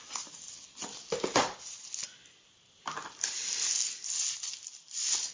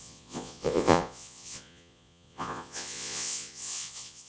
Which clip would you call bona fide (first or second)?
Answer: first